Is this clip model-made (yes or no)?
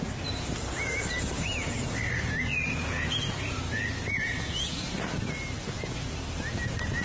no